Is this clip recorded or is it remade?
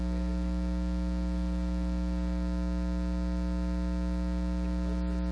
recorded